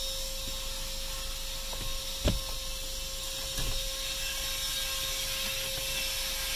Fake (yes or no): no